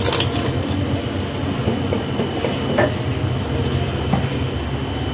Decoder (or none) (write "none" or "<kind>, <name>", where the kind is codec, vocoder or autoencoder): none